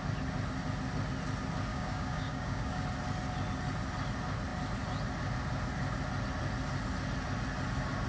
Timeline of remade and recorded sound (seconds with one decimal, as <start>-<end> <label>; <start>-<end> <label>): 0.0-1.7 recorded; 1.7-2.8 remade; 2.8-8.1 recorded